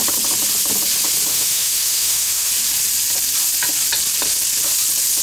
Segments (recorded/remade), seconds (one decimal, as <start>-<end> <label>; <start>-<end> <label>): 0.0-1.3 recorded; 1.3-2.5 remade; 2.5-5.2 recorded